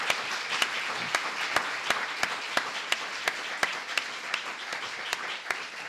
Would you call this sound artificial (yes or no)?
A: no